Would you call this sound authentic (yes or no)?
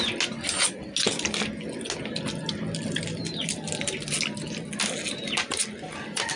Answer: yes